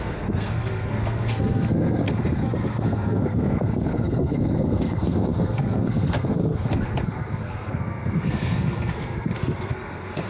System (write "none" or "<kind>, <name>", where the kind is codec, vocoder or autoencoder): codec, SNAC